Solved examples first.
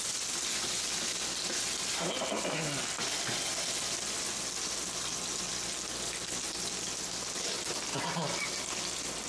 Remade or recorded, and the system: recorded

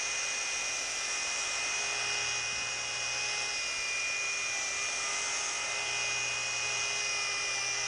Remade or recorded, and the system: recorded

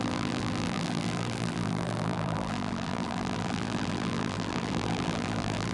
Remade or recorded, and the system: remade, vocoder, BigVGAN v2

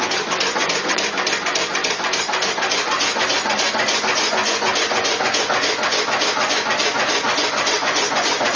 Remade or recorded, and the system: remade, vocoder, Vocos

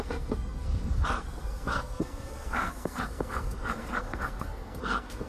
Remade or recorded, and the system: remade, codec, SNAC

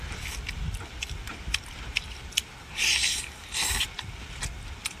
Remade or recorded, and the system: remade, vocoder, BigVGAN v2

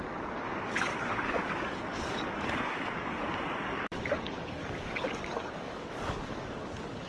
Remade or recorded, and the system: remade, codec, DAC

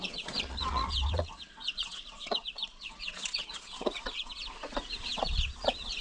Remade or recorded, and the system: remade, vocoder, Vocos